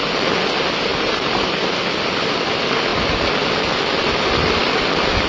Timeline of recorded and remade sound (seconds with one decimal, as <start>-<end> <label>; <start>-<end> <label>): 0.0-0.9 recorded; 0.9-1.5 remade; 1.5-5.3 recorded